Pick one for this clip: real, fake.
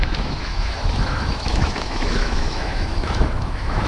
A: fake